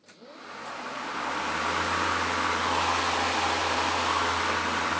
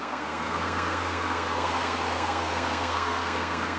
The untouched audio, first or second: first